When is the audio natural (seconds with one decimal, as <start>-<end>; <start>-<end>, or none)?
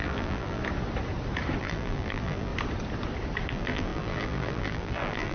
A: 0.6-1.6; 2.5-3.5